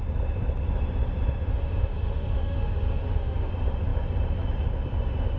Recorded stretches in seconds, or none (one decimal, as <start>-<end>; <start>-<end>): 0.0-1.5; 3.5-5.4